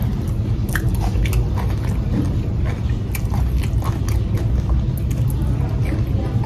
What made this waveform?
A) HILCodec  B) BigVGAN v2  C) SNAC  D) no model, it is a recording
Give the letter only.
D